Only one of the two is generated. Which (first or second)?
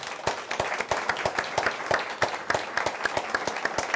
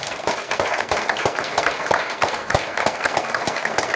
second